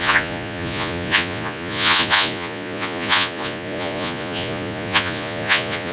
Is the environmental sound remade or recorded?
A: remade